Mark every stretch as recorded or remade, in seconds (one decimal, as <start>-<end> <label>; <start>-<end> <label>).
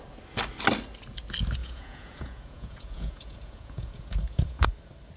0.0-1.6 recorded; 1.6-4.7 remade; 4.7-5.2 recorded